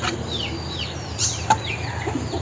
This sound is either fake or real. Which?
fake